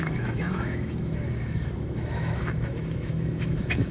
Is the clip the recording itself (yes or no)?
no